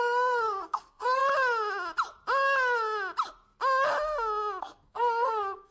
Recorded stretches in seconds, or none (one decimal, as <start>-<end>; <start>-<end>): 1.2-4.6